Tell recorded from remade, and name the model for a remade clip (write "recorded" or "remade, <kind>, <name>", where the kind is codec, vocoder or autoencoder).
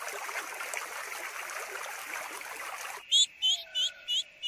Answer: recorded